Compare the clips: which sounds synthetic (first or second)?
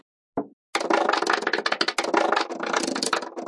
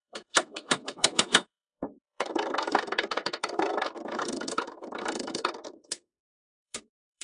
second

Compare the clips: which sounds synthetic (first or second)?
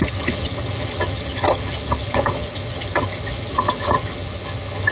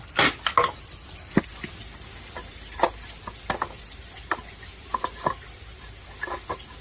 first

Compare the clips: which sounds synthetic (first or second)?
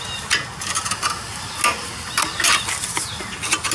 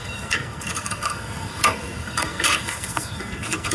second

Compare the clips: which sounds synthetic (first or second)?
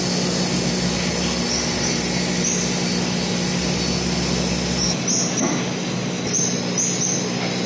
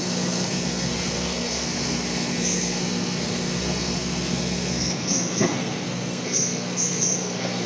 second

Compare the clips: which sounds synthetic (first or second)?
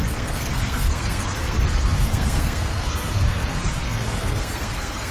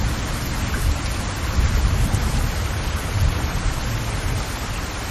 first